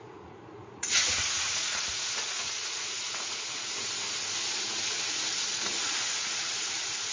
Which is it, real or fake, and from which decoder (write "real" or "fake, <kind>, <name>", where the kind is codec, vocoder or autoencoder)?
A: fake, vocoder, Vocos